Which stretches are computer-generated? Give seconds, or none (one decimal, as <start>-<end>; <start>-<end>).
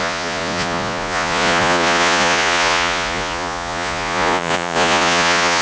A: 0.0-5.6